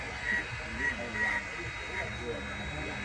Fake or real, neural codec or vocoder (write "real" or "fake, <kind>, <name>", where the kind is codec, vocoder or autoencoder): real